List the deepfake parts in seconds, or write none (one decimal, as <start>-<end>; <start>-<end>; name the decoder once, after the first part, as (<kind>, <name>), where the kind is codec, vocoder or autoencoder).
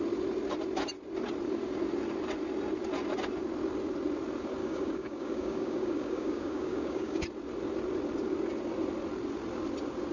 4.6-7.2 (codec, DAC)